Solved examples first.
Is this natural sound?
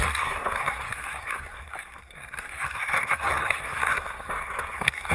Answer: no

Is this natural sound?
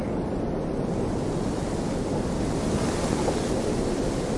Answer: yes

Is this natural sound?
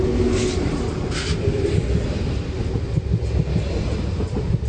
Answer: yes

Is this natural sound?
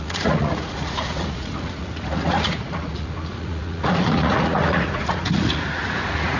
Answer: no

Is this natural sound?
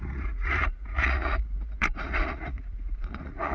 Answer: no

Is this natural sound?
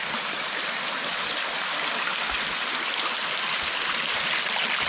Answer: yes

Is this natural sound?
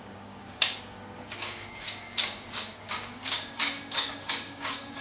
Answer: no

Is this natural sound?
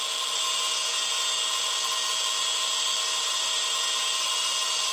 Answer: yes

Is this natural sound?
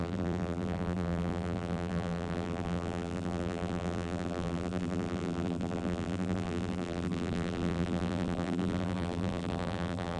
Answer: no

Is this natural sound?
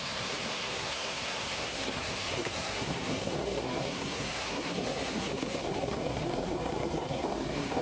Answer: no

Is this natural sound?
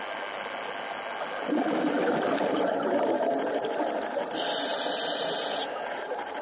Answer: yes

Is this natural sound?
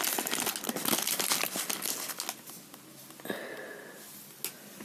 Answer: yes